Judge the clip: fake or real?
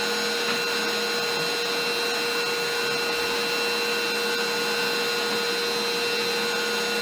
real